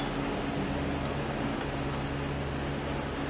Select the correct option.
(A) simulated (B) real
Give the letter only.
B